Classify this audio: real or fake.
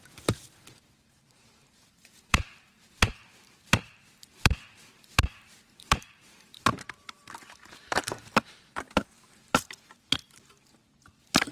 fake